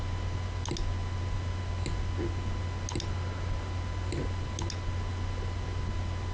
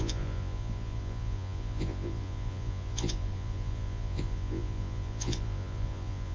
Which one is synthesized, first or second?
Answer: second